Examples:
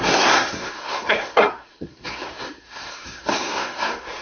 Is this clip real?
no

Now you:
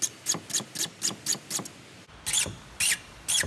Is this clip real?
yes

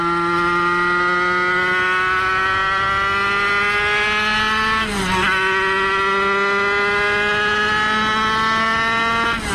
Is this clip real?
yes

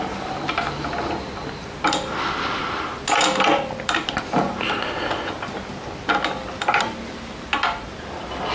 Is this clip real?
yes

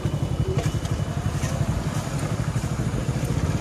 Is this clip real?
yes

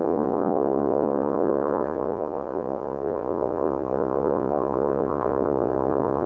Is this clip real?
no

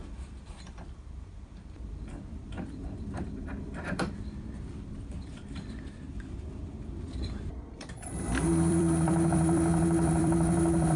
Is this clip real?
no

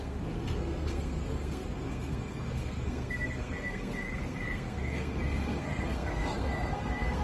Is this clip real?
no